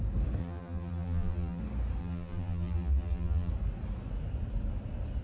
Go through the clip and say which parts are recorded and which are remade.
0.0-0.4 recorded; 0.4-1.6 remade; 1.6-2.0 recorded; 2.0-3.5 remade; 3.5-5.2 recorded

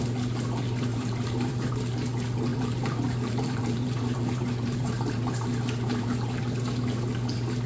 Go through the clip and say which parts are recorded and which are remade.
0.0-0.9 recorded; 0.9-1.7 remade; 1.7-2.5 recorded; 2.5-6.4 remade; 6.4-7.7 recorded

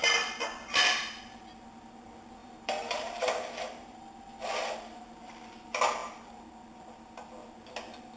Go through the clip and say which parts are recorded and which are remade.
0.0-2.4 recorded; 2.4-4.0 remade; 4.0-8.2 recorded

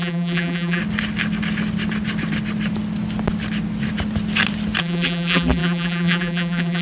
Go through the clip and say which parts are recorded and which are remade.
0.0-0.8 remade; 0.8-4.8 recorded; 4.8-6.8 remade

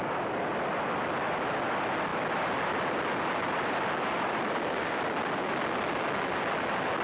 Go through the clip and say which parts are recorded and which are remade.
0.0-2.1 recorded; 2.1-5.7 remade; 5.7-7.0 recorded

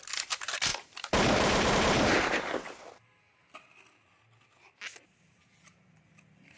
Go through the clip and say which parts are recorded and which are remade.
0.0-0.7 recorded; 0.7-2.7 remade; 2.7-6.6 recorded

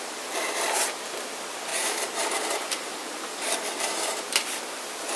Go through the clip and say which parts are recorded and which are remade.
0.0-1.7 recorded; 1.7-4.8 remade; 4.8-5.2 recorded